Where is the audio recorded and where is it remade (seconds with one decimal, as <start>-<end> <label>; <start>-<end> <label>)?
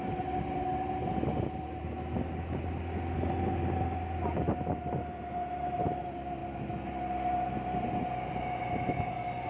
0.0-9.5 recorded